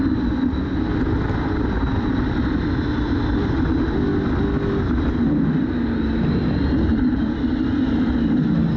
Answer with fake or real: real